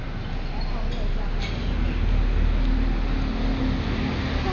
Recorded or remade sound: recorded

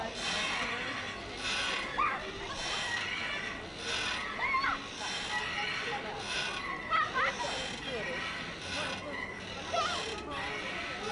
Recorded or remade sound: recorded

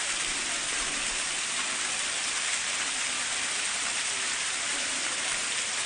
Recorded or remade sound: recorded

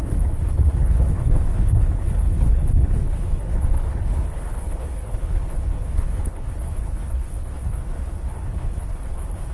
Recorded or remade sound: remade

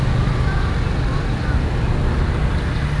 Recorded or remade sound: recorded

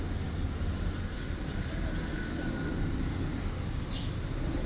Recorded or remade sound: recorded